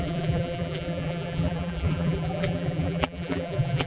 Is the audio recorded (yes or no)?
no